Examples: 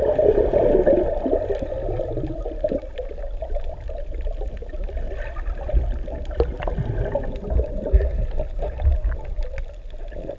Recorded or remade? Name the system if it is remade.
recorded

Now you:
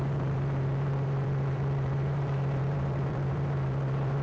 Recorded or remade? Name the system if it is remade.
remade, vocoder, BigVGAN v2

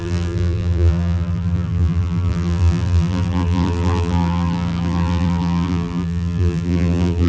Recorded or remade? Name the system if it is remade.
remade, vocoder, BigVGAN v2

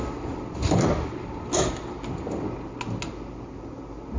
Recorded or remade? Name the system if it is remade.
recorded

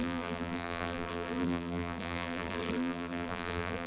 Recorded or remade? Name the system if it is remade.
remade, vocoder, BigVGAN v2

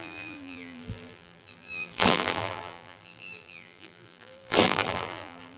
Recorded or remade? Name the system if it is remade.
remade, vocoder, BigVGAN v2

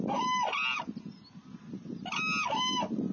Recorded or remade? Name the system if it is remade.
recorded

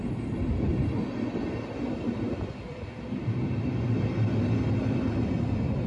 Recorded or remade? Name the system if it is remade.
recorded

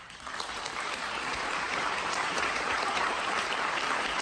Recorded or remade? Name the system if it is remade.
remade, vocoder, BigVGAN v2